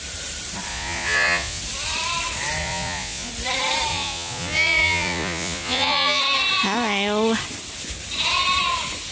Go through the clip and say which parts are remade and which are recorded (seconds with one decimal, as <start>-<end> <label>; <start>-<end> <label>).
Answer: 0.0-0.7 recorded; 0.7-1.6 remade; 1.6-2.6 recorded; 2.6-3.3 remade; 3.3-3.9 recorded; 3.9-6.2 remade; 6.2-9.1 recorded